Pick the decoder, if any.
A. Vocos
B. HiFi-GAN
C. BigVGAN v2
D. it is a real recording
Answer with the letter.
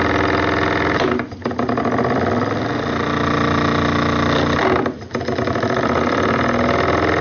D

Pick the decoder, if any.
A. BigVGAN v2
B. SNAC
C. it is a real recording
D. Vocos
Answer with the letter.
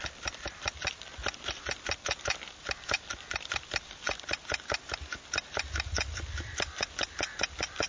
C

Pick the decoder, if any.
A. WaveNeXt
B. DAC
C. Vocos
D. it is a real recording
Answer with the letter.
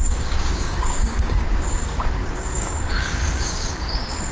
B